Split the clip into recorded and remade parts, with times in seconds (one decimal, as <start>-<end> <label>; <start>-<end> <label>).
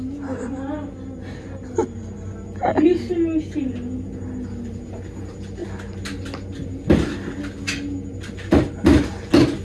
0.0-9.6 recorded